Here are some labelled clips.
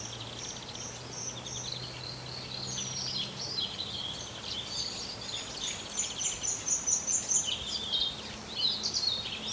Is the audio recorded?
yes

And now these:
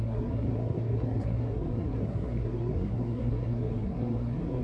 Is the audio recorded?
no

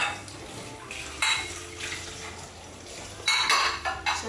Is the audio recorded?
yes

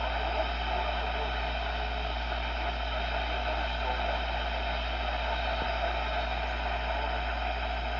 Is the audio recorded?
yes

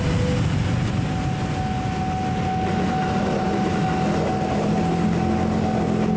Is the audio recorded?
yes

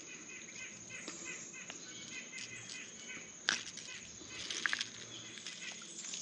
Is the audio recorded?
yes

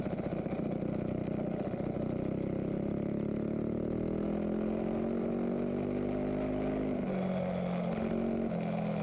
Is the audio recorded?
yes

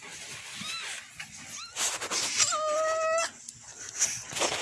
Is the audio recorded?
yes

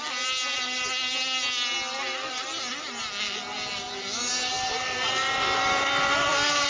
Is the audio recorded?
yes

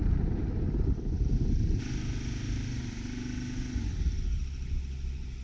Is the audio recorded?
yes